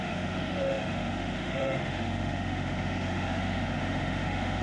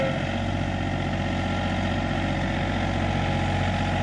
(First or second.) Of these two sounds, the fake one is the first